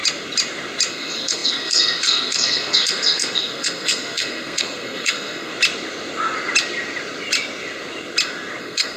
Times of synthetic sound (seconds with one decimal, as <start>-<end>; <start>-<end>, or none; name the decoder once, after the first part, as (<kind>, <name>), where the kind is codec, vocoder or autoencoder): 0.9-5.5 (codec, SNAC); 8.6-9.0